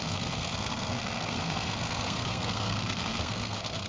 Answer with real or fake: fake